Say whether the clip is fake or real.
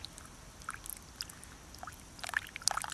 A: real